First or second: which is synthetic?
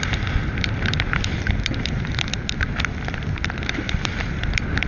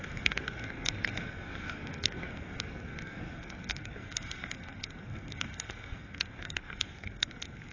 second